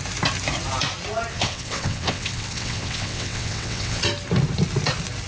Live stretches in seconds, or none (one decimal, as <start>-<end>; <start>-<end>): 0.0-1.3; 4.0-5.3